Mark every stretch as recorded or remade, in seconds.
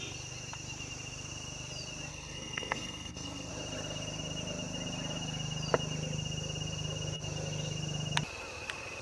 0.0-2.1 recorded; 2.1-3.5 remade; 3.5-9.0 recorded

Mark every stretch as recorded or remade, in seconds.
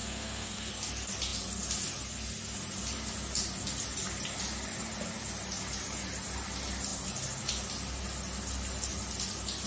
0.0-0.7 remade; 0.7-9.7 recorded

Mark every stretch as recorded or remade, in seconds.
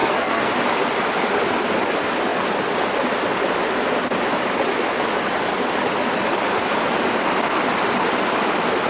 0.0-0.5 remade; 0.5-8.9 recorded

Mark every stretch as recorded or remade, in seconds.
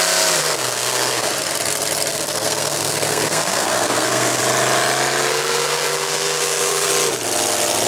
0.0-0.4 recorded; 0.4-1.3 remade; 1.3-2.1 recorded; 2.1-4.4 remade; 4.4-5.3 recorded; 5.3-6.9 remade; 6.9-7.9 recorded